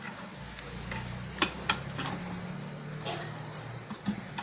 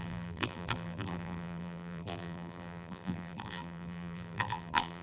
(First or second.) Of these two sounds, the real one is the first